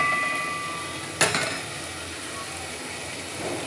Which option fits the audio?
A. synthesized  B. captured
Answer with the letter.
B